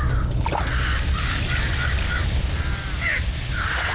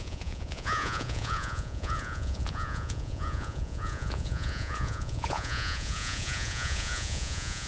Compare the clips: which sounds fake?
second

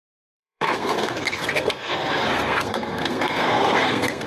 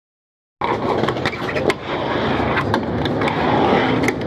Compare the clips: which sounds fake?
first